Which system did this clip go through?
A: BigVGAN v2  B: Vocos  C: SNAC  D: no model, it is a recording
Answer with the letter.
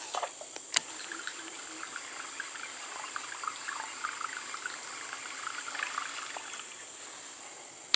D